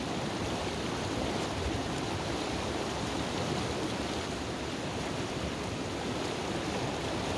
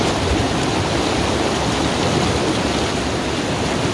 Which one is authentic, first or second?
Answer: second